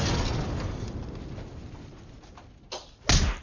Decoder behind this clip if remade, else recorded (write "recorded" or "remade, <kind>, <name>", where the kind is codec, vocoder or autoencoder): recorded